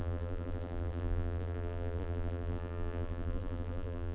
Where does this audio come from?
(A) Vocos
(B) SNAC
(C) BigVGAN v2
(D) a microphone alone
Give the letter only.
C